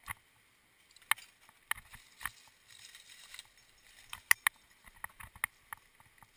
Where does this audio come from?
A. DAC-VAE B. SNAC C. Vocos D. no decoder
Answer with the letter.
D